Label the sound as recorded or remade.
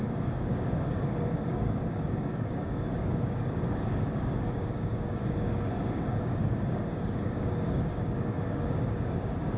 remade